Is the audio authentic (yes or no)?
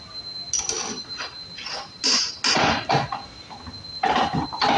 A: yes